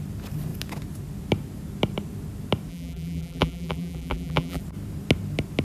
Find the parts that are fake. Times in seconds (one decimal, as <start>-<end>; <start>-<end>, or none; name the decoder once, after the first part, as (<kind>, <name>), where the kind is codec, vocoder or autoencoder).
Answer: 2.7-4.6 (vocoder, BigVGAN v2)